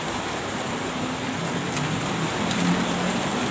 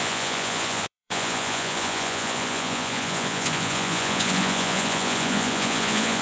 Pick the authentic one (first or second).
first